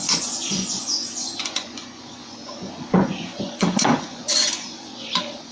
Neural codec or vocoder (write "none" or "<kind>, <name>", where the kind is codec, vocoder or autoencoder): vocoder, Vocos